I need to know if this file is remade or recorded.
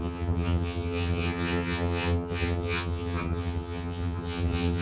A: remade